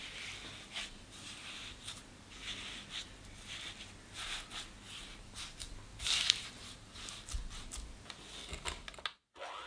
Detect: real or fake real